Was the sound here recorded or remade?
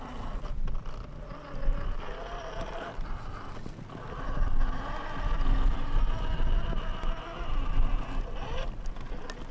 recorded